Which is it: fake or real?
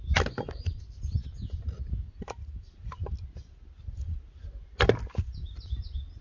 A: real